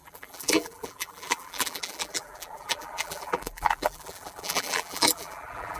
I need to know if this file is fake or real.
fake